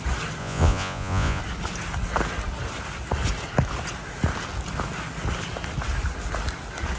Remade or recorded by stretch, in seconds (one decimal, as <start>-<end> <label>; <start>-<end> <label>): 0.0-0.4 recorded; 0.4-1.4 remade; 1.4-7.0 recorded